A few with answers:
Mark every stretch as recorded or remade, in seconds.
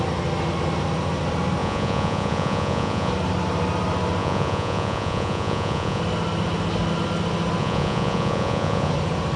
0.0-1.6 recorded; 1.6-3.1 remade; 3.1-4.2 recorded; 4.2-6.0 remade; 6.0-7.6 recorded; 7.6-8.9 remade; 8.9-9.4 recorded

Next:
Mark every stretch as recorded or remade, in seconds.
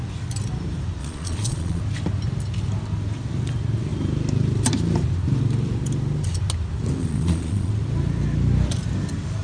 0.0-1.0 recorded; 1.0-1.8 remade; 1.8-7.0 recorded; 7.0-7.7 remade; 7.7-9.4 recorded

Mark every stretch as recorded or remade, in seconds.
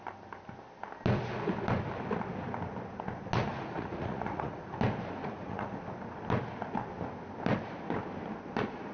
0.0-3.5 recorded; 3.5-4.7 remade; 4.7-5.2 recorded; 5.2-5.8 remade; 5.8-8.9 recorded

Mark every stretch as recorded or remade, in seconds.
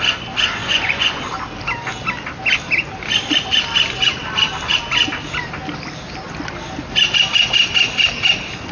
0.0-0.6 recorded; 0.6-1.2 remade; 1.2-8.7 recorded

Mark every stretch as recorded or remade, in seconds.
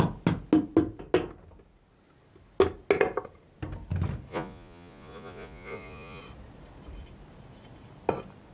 0.0-4.3 recorded; 4.3-6.2 remade; 6.2-8.5 recorded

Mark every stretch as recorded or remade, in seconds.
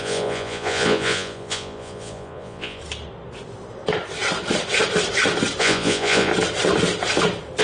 0.0-2.8 remade; 2.8-5.6 recorded; 5.6-6.3 remade; 6.3-7.6 recorded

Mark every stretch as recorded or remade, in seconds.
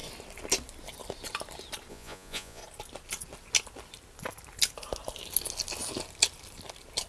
0.0-1.9 recorded; 1.9-2.6 remade; 2.6-7.1 recorded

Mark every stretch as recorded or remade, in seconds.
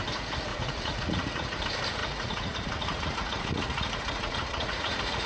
0.0-0.5 recorded; 0.5-1.6 remade; 1.6-2.0 recorded; 2.0-5.3 remade